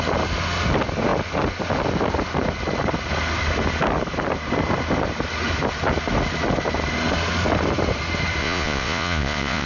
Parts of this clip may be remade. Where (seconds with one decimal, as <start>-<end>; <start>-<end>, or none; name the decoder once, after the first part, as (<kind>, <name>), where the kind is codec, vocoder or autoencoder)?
8.4-9.7 (vocoder, Vocos)